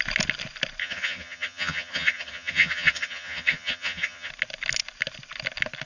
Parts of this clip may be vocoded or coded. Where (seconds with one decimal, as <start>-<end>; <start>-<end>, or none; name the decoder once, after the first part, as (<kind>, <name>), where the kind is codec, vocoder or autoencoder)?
0.8-4.3 (vocoder, HiFi-GAN)